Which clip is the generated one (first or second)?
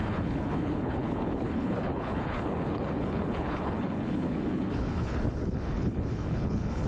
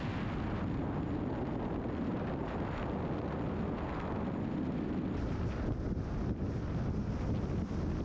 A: first